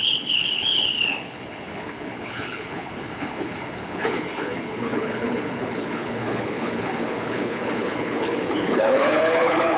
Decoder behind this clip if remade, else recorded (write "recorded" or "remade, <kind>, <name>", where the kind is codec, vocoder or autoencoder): remade, codec, HILCodec